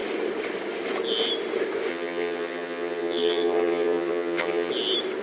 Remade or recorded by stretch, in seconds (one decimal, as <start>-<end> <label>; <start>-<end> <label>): 0.0-1.9 recorded; 1.9-4.7 remade; 4.7-5.2 recorded